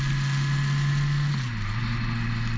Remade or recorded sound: recorded